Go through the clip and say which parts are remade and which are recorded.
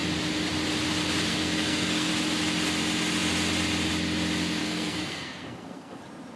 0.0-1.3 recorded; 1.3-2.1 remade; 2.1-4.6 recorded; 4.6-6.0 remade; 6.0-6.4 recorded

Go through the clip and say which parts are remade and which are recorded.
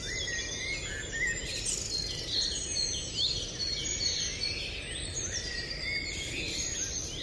0.0-7.2 recorded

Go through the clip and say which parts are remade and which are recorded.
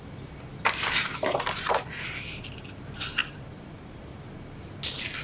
0.0-3.2 recorded; 3.2-4.2 remade; 4.2-5.2 recorded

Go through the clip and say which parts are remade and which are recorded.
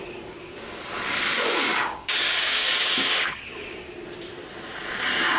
0.0-1.7 recorded; 1.7-3.4 remade; 3.4-5.4 recorded